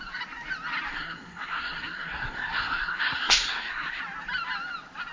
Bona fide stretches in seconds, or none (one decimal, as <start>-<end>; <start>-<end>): 0.0-0.9; 4.0-5.1